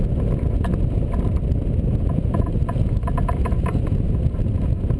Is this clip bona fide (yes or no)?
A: yes